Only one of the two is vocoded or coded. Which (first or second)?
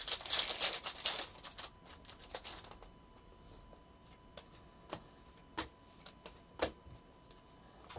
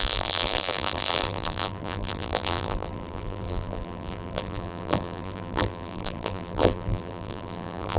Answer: second